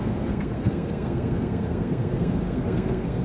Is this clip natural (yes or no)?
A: no